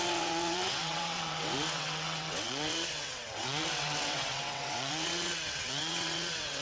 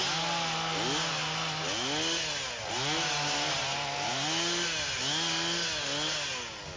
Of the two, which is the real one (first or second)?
second